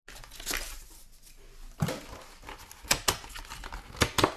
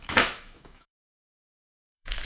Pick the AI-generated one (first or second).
second